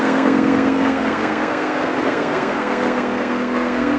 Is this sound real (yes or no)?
no